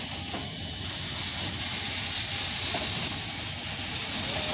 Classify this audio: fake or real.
real